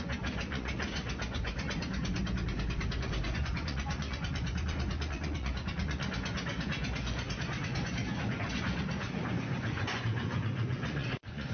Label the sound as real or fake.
fake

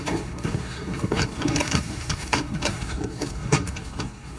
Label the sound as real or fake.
fake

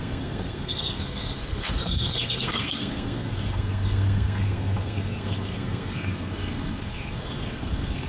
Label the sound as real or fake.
fake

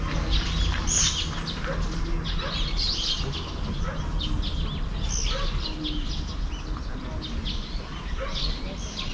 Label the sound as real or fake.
real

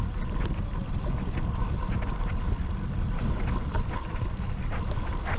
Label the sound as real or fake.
fake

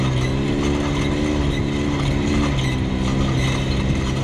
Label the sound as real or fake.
real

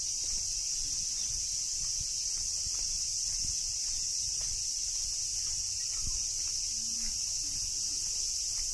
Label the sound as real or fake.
real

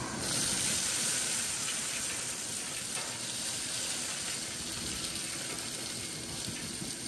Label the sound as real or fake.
real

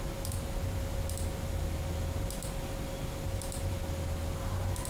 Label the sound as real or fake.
real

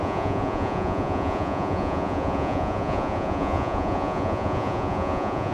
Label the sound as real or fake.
fake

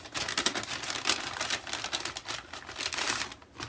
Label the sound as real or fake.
real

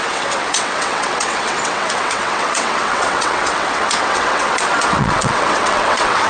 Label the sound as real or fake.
fake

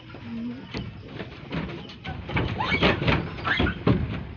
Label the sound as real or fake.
real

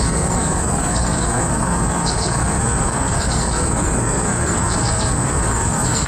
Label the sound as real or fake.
fake